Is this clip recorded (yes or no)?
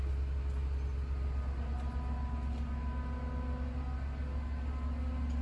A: yes